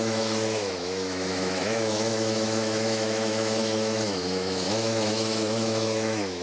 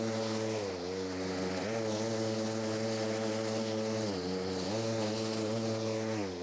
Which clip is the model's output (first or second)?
first